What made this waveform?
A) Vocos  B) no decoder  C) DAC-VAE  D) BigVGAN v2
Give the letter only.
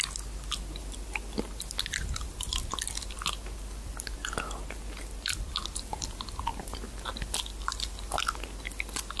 B